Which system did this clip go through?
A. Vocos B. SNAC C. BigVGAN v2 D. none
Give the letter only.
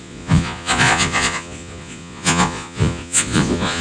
A